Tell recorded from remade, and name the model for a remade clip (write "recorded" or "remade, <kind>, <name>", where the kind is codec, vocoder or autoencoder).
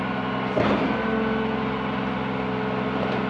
recorded